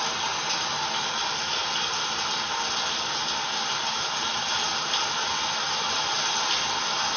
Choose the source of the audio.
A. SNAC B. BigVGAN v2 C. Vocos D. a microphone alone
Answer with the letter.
D